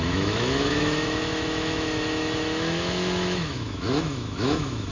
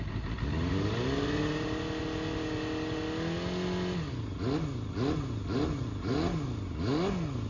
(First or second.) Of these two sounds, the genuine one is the second